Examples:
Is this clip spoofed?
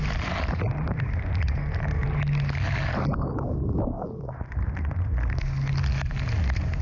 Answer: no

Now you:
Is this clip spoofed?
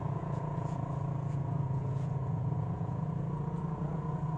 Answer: yes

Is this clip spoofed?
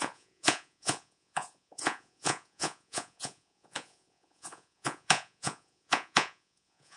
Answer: yes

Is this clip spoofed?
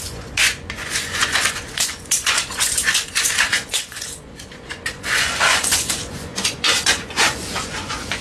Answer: yes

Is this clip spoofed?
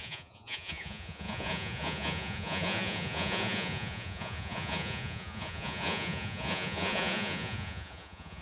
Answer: yes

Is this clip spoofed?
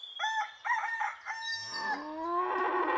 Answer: no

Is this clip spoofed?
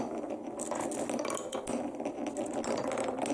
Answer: no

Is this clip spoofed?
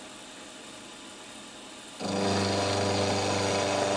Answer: no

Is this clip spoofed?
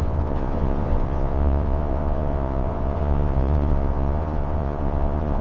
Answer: yes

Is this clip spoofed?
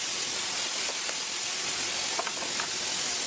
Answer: no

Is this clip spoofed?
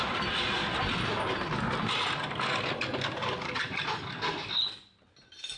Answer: no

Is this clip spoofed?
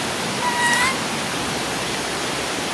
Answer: no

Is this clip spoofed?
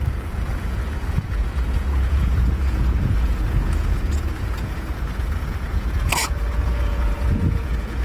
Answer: yes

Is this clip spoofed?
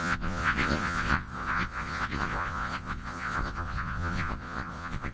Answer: yes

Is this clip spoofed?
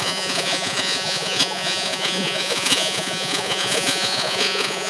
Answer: yes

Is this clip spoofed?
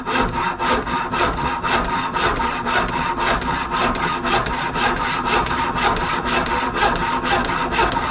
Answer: no